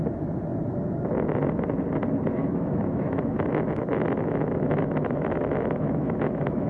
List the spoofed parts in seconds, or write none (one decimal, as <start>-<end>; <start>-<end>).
2.4-6.7